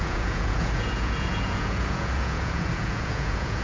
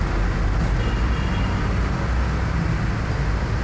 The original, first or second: second